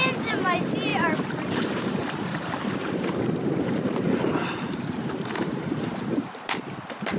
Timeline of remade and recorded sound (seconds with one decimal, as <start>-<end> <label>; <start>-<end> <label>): 0.0-7.2 remade